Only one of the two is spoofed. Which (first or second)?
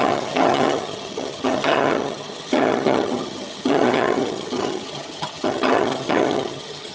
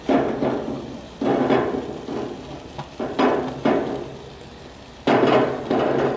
first